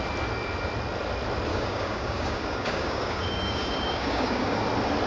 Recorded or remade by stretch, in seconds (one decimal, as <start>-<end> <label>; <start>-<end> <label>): 0.0-1.5 recorded; 1.5-4.6 remade; 4.6-5.1 recorded